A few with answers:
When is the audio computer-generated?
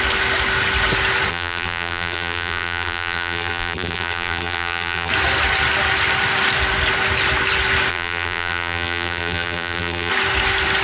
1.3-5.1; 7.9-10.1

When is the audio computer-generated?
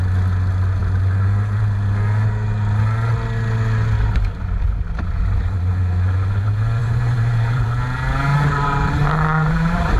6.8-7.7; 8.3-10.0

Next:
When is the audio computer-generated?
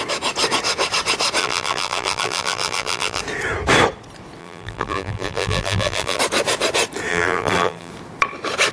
1.4-3.2; 4.4-6.2; 7.1-7.9